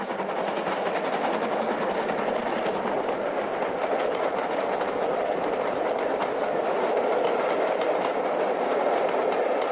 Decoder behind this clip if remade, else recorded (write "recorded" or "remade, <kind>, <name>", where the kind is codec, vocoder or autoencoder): recorded